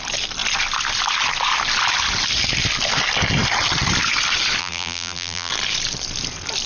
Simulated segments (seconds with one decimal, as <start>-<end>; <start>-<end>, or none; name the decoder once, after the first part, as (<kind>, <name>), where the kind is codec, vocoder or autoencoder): 4.6-5.5 (vocoder, BigVGAN v2)